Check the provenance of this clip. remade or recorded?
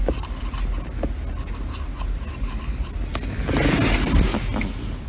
recorded